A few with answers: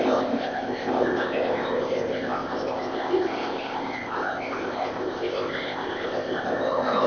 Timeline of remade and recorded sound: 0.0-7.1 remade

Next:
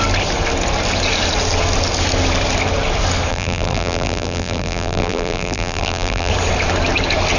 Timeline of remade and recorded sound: 0.0-3.3 recorded; 3.3-6.3 remade; 6.3-7.4 recorded

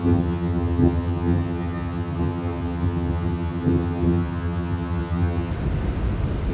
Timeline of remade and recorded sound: 0.0-5.5 remade; 5.5-6.5 recorded

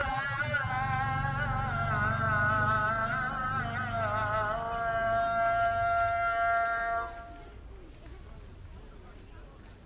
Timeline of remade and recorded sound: 0.0-0.7 remade; 0.7-9.9 recorded

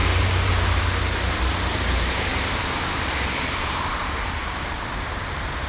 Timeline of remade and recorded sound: 0.0-0.5 remade; 0.5-1.7 recorded; 1.7-4.9 remade; 4.9-5.7 recorded

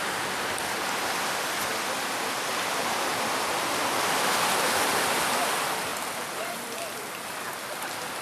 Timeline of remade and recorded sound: 0.0-1.7 recorded; 1.7-2.5 remade; 2.5-3.1 recorded; 3.1-5.5 remade; 5.5-5.9 recorded; 5.9-6.5 remade; 6.5-8.2 recorded